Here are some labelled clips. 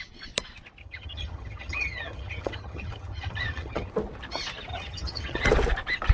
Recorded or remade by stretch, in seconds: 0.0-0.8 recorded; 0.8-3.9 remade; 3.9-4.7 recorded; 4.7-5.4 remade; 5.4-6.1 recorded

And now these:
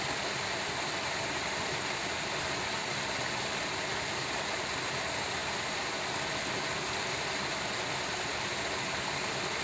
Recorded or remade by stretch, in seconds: 0.0-9.6 recorded

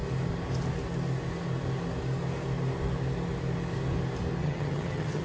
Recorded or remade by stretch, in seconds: 0.0-4.4 recorded; 4.4-5.2 remade